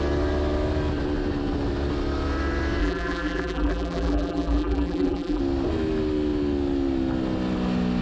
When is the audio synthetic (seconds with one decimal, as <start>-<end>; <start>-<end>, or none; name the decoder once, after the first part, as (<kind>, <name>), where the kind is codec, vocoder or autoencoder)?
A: 2.8-5.4 (vocoder, BigVGAN v2)